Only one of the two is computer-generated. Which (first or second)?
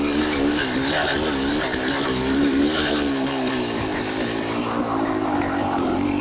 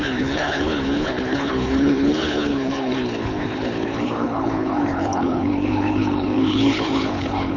second